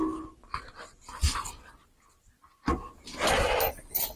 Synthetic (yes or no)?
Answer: no